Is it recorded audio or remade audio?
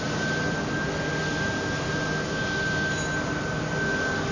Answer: recorded